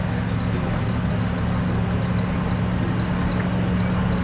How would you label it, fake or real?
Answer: real